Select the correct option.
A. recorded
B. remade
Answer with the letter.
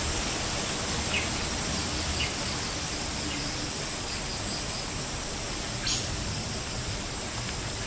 A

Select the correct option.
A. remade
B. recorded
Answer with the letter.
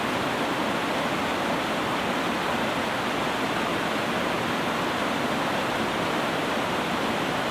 B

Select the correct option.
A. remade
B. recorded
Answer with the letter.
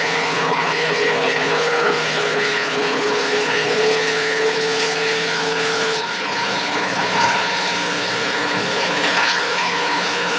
A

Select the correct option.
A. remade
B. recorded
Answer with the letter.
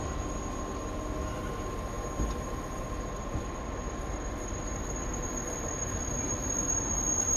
B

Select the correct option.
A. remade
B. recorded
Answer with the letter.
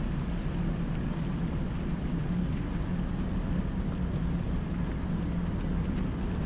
B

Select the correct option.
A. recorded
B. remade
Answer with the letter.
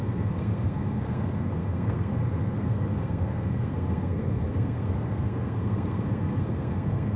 B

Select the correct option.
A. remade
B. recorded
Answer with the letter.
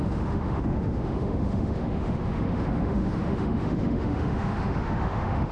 A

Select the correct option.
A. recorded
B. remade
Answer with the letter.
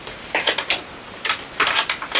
A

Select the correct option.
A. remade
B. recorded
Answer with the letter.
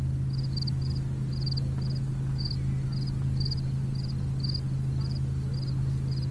B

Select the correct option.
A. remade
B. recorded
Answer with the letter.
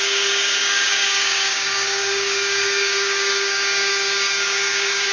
A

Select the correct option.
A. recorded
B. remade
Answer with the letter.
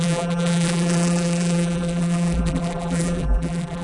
B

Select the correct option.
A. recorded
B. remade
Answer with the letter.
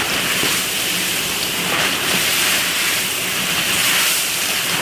B